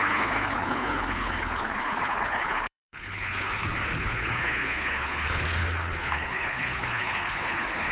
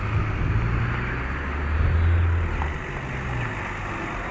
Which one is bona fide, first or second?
second